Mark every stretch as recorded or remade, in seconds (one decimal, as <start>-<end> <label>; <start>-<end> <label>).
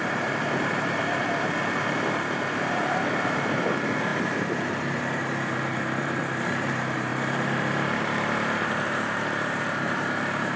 0.0-10.6 remade